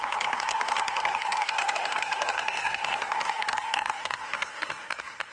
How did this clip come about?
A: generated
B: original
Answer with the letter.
A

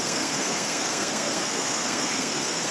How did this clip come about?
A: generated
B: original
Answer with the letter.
A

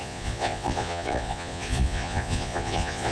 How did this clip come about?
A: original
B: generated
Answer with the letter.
B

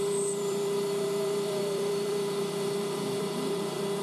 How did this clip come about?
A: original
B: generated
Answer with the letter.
B